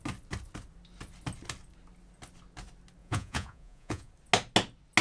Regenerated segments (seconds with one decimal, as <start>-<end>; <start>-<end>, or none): 3.0-4.1